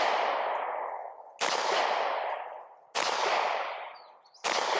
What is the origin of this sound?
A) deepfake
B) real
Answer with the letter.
B